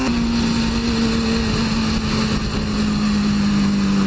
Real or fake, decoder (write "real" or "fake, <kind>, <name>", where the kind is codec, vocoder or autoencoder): real